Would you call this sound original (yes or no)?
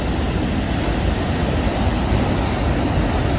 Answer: yes